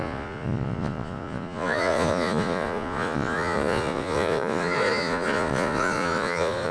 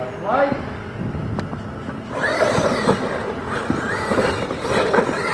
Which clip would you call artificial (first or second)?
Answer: first